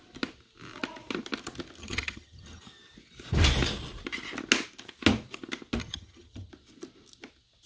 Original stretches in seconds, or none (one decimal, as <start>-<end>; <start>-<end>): 0.0-1.8; 2.6-5.8; 6.5-7.7